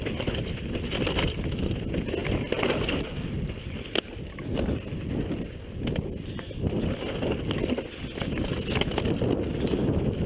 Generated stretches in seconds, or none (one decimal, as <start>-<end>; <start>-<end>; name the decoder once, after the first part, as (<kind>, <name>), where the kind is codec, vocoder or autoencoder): none